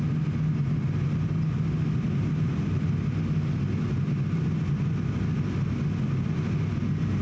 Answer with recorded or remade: recorded